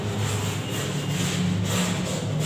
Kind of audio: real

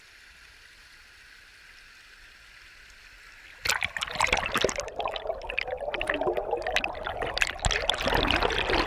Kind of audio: real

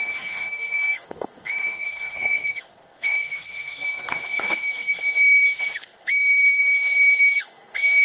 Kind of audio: fake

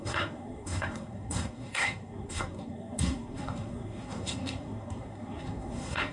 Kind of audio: fake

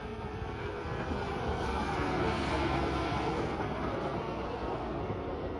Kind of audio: fake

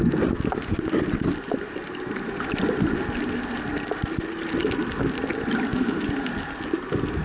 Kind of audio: real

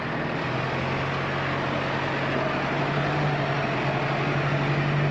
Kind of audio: real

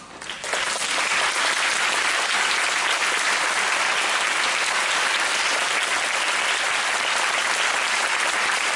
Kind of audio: real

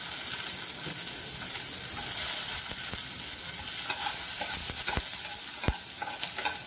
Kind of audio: real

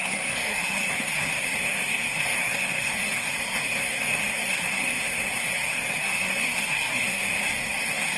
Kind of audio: fake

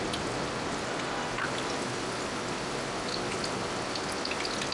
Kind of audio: real